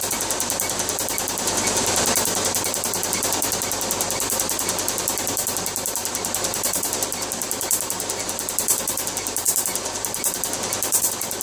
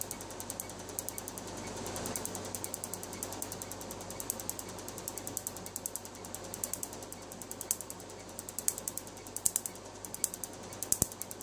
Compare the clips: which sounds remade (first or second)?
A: first